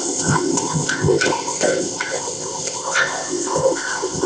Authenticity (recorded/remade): remade